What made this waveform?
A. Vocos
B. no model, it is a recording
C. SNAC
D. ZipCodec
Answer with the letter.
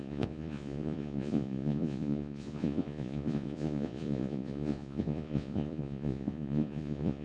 A